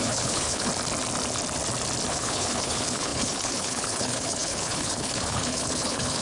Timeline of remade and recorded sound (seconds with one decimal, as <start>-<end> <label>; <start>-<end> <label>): 0.0-0.7 remade; 0.7-2.1 recorded; 2.1-6.2 remade